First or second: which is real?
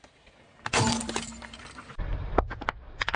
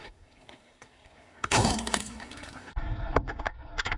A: first